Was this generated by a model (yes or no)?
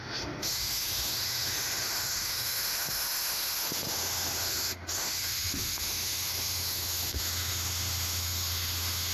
yes